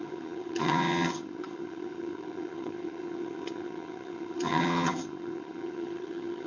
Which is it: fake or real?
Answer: fake